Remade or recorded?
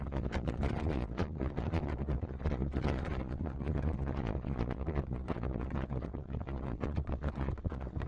remade